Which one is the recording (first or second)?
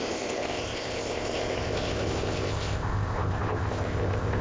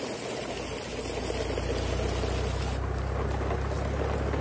second